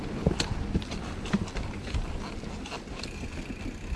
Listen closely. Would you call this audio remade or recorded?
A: recorded